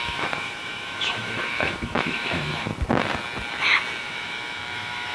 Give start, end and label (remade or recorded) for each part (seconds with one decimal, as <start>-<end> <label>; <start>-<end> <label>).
0.0-2.7 remade; 2.7-4.0 recorded; 4.0-5.1 remade